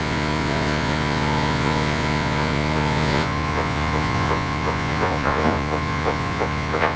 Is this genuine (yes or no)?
no